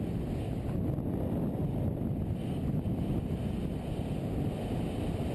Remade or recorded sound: recorded